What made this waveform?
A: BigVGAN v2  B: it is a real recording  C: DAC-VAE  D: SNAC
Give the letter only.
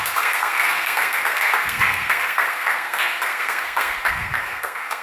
D